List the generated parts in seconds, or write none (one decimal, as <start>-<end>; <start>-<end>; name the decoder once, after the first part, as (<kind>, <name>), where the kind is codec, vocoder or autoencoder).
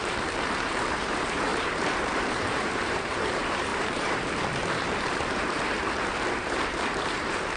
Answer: 0.0-7.6 (vocoder, BigVGAN v2)